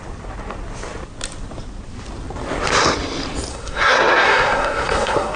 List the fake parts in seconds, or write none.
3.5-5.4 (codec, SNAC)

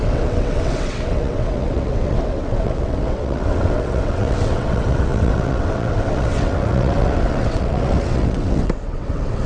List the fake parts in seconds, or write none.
0.0-9.5 (vocoder, WaveNeXt)

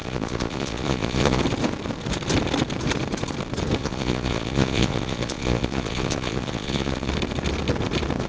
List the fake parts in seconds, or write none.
0.0-1.4 (vocoder, Vocos); 3.8-7.1

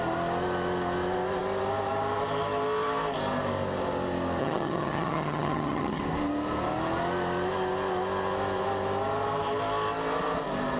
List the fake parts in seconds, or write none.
4.4-6.0 (vocoder, HiFi-GAN)